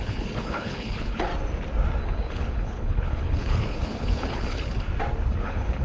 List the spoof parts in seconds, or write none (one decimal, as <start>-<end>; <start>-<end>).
0.0-1.3; 2.0-4.7; 5.3-5.8